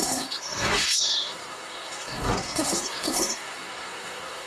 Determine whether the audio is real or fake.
fake